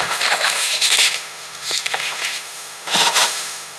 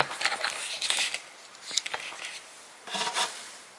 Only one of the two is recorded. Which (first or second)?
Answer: second